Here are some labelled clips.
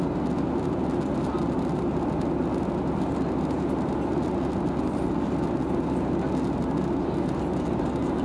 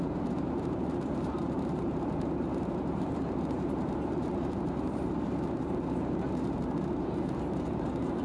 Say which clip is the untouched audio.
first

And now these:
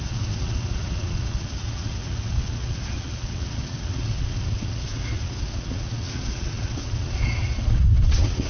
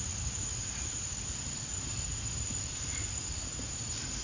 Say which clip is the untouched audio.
second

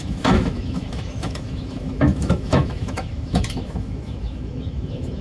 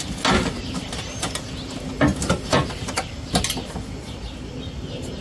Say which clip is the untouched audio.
second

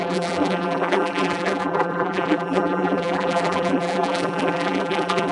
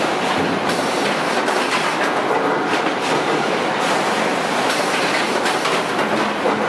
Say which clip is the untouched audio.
second